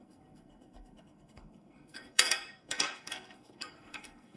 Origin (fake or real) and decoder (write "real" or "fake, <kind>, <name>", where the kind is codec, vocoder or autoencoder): fake, codec, SNAC